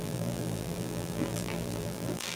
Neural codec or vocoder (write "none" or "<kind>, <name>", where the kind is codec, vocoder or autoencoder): vocoder, BigVGAN v2